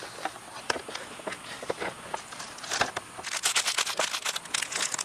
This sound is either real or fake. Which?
real